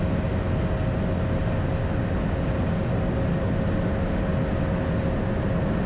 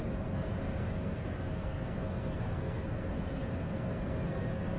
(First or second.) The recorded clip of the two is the first